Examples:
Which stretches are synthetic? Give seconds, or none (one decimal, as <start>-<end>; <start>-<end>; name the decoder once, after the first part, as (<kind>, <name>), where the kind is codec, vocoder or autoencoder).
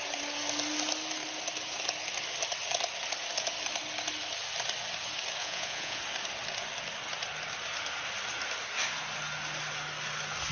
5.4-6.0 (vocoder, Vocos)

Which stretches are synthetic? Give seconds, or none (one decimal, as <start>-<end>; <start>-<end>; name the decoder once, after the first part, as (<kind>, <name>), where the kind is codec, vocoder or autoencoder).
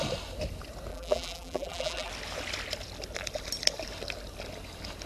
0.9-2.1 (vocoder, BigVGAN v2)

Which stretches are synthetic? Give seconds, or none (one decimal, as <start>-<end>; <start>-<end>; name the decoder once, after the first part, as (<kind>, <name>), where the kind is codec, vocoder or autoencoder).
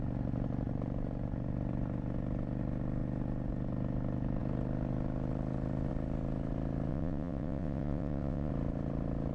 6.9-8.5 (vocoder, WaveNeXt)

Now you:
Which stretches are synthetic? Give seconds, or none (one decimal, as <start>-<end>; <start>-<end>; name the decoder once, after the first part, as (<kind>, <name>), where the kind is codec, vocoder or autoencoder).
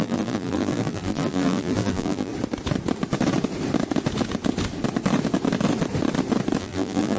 0.0-2.3 (vocoder, BigVGAN v2); 6.6-7.2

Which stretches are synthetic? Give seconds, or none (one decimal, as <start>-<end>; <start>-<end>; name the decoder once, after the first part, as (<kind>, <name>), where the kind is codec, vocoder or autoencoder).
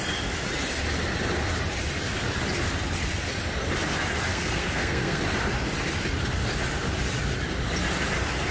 4.3-5.2 (codec, SNAC)